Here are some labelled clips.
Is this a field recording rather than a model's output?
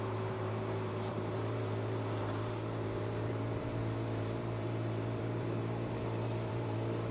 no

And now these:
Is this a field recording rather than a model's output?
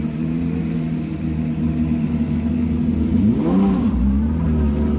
yes